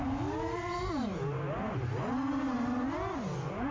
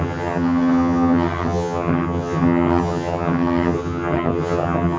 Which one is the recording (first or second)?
first